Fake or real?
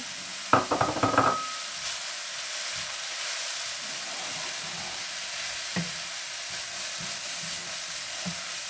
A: real